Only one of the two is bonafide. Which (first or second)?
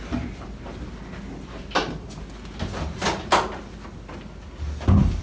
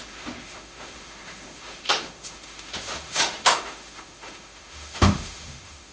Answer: first